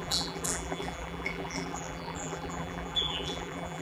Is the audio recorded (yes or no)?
no